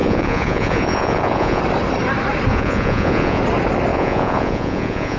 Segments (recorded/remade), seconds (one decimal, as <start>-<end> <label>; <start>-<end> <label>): 0.0-1.6 remade; 1.6-2.5 recorded; 2.5-3.4 remade; 3.4-3.9 recorded; 3.9-5.2 remade